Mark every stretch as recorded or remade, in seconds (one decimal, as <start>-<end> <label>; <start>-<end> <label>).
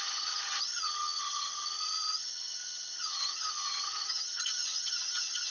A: 0.0-5.5 remade